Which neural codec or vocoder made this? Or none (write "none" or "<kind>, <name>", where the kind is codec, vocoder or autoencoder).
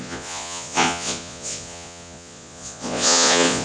vocoder, Vocos